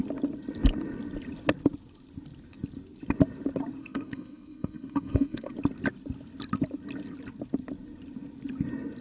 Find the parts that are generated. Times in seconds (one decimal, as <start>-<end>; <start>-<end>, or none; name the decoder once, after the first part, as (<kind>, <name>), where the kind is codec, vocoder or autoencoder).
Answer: 3.8-5.5 (codec, SNAC)